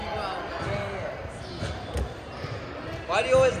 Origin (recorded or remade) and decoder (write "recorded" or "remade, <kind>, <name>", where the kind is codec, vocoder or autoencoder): recorded